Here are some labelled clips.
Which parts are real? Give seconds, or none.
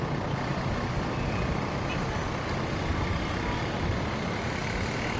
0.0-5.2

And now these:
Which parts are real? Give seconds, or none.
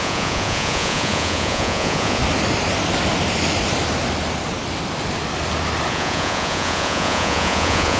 2.2-5.9